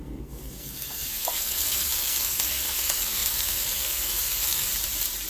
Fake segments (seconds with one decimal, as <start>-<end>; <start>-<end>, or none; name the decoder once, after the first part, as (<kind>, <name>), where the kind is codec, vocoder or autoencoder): 0.0-4.7 (codec, SNAC)